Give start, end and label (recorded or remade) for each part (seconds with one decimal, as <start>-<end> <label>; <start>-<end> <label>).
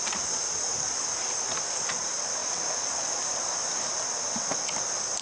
0.0-5.2 recorded